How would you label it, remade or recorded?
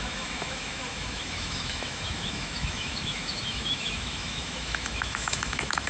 remade